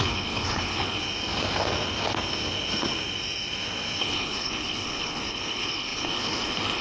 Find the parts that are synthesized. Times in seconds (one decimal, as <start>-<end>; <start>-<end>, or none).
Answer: 0.0-1.0; 4.0-6.8